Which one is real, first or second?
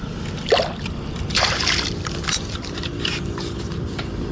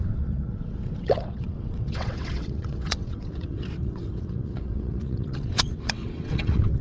first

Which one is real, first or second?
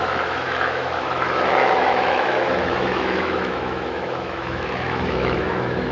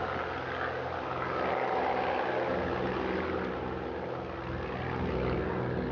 second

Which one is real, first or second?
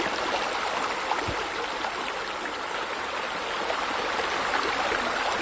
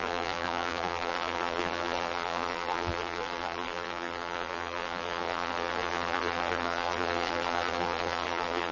first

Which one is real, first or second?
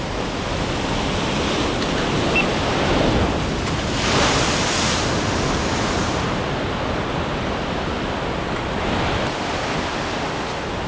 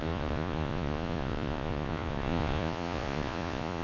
first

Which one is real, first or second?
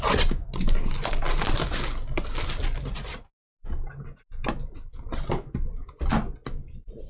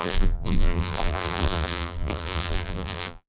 first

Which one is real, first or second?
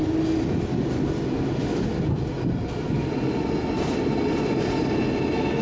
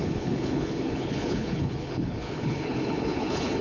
first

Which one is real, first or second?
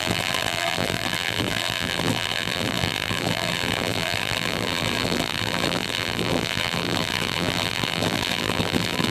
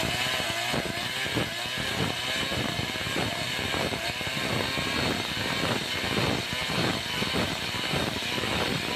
second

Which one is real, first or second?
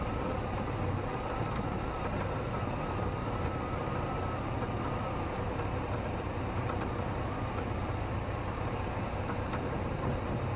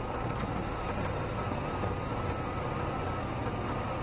second